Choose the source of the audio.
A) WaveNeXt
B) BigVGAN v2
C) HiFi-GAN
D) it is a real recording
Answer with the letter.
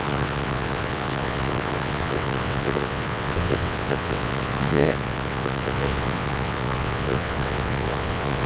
A